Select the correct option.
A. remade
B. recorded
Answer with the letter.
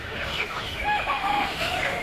A